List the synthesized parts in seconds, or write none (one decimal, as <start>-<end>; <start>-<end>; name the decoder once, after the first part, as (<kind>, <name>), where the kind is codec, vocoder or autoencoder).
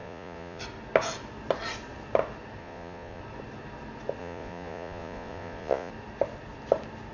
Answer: 0.0-0.6 (vocoder, Vocos); 2.6-3.2; 4.2-5.9